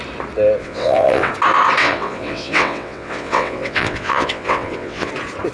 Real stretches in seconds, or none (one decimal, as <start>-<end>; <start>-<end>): 0.0-0.6; 1.3-1.8; 5.1-5.5